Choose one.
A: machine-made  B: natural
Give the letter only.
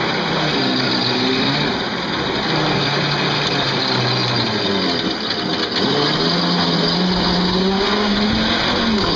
B